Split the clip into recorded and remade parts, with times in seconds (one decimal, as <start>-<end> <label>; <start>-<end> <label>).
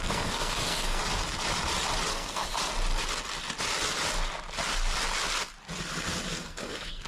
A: 0.0-1.0 remade; 1.0-2.1 recorded; 2.1-2.5 remade; 2.5-6.3 recorded; 6.3-7.1 remade